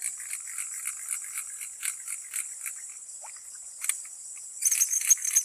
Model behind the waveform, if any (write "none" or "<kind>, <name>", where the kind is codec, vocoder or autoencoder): none